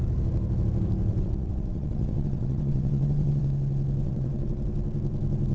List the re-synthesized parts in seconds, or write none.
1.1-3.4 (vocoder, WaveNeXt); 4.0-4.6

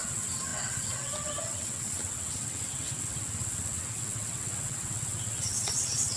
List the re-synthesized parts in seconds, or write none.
0.0-6.2 (vocoder, WaveNeXt)

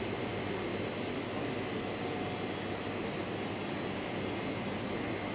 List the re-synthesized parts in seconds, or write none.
none

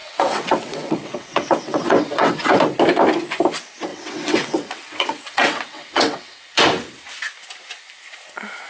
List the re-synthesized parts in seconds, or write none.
0.0-2.5 (vocoder, WaveNeXt); 3.9-6.6

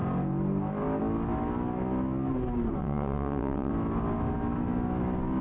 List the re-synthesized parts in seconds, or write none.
2.8-3.7 (vocoder, WaveNeXt)